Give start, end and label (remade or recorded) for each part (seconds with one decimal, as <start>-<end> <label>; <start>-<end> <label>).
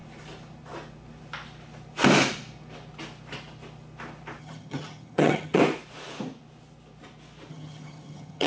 0.0-4.4 recorded; 4.4-5.6 remade; 5.6-7.5 recorded; 7.5-8.5 remade